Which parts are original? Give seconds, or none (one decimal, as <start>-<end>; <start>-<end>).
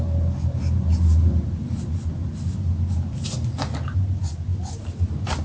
0.0-5.4